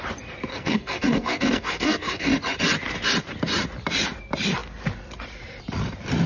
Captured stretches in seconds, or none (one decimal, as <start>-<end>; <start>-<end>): 0.0-0.5; 2.3-6.3